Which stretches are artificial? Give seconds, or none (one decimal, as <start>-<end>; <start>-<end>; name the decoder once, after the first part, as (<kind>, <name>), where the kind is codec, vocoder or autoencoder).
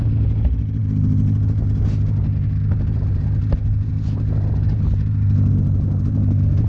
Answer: none